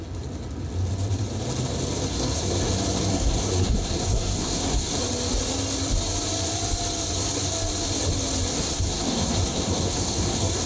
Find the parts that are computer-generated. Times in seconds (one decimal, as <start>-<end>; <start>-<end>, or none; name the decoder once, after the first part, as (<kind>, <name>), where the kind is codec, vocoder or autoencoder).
2.1-2.7 (codec, SNAC); 3.1-5.0; 8.5-10.7